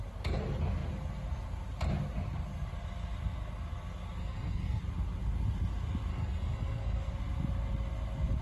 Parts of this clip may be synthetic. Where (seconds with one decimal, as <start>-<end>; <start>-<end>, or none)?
4.2-4.8; 6.1-7.1